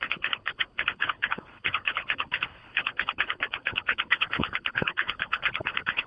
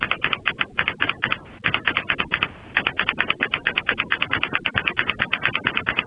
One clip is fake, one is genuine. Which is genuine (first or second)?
second